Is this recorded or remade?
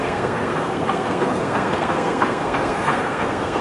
remade